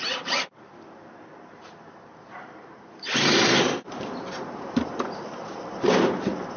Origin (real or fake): fake